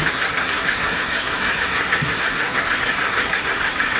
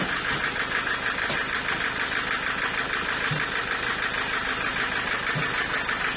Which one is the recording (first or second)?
second